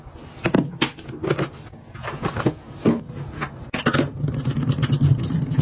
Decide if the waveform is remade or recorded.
recorded